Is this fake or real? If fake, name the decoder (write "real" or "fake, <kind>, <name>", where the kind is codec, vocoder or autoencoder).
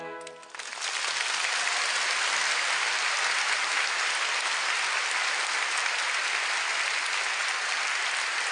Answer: real